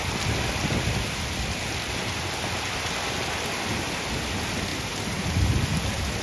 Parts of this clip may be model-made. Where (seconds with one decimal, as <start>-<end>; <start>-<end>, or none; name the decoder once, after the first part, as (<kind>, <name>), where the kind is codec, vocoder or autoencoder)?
4.7-5.7 (vocoder, BigVGAN v2)